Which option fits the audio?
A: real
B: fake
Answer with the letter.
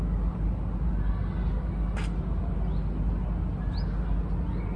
A